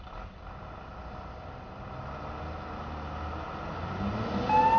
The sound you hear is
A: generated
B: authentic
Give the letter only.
B